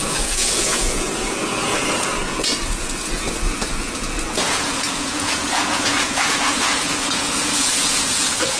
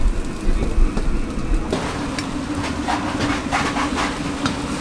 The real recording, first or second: second